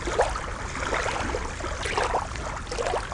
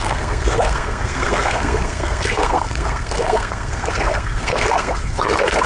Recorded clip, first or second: first